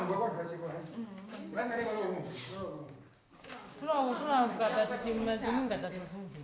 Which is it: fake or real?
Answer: fake